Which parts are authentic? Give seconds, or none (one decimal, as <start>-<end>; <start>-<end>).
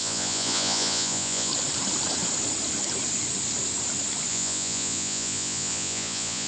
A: 1.5-4.3